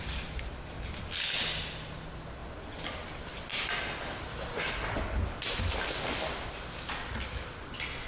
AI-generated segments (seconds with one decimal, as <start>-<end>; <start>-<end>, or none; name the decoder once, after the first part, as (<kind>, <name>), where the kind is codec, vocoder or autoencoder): none